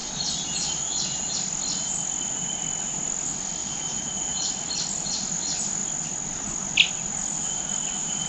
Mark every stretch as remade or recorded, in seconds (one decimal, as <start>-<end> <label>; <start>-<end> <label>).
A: 0.0-1.3 remade; 1.3-3.6 recorded; 3.6-4.5 remade; 4.5-8.3 recorded